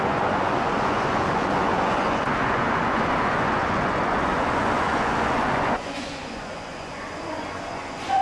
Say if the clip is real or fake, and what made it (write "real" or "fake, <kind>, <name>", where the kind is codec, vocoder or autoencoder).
fake, vocoder, Vocos